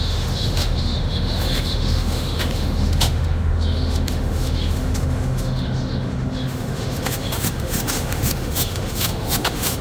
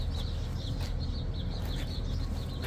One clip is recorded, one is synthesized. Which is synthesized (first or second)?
first